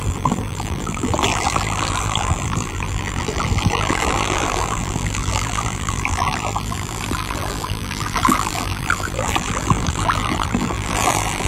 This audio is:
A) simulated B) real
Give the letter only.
A